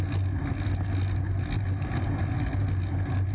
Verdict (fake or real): real